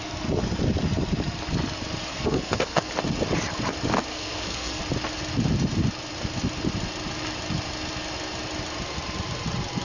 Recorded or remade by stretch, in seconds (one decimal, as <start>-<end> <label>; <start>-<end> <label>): 0.0-2.1 recorded; 2.1-2.9 remade; 2.9-4.1 recorded; 4.1-4.8 remade; 4.8-9.8 recorded